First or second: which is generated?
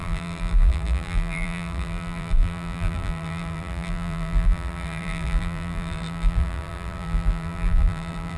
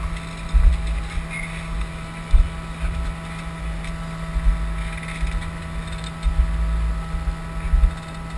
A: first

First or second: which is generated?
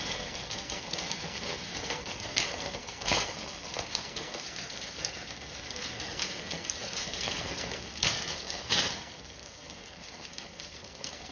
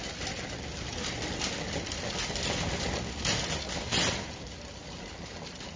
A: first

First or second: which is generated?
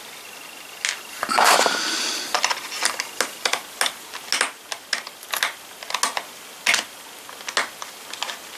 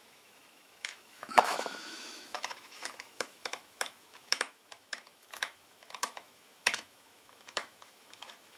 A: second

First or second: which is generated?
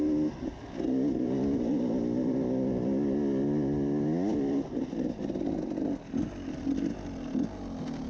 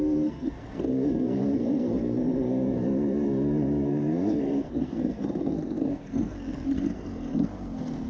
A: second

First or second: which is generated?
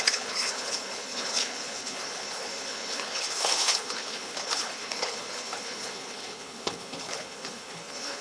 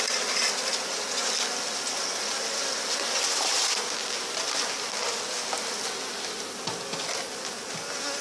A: first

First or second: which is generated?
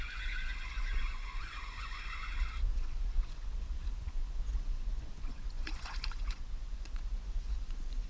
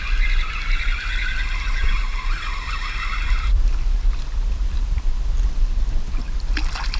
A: first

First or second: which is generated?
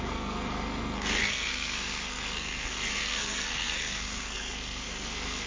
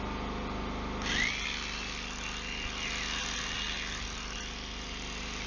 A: first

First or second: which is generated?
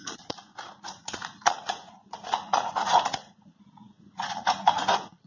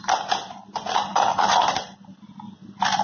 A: first